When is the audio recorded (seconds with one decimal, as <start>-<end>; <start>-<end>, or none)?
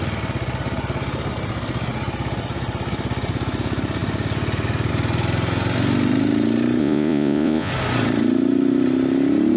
0.0-6.8; 7.7-9.6